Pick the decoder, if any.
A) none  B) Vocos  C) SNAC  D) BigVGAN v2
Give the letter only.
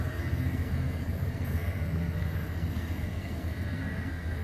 C